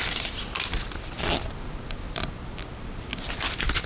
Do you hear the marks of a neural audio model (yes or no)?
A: no